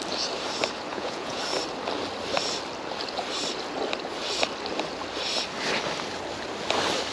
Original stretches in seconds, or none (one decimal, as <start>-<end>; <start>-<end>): 0.0-0.9; 1.4-7.1